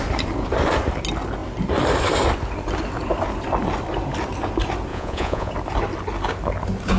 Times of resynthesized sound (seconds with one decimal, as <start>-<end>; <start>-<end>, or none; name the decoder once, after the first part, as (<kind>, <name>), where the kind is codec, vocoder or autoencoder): 4.9-5.5 (vocoder, Vocos)